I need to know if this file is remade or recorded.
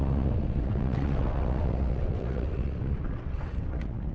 remade